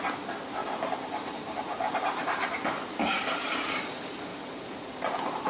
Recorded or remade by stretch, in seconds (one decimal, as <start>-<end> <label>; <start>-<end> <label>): 0.0-0.6 recorded; 0.6-3.9 remade; 3.9-4.3 recorded; 4.3-5.5 remade